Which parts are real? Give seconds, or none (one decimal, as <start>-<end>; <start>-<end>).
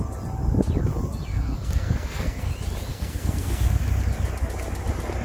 0.0-1.3; 2.5-2.9; 3.8-5.2